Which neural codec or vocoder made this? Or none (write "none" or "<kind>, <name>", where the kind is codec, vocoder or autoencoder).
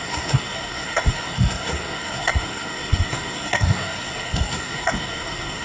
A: codec, SNAC